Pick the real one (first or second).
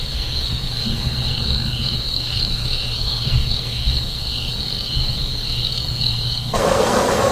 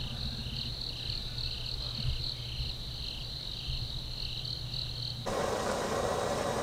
second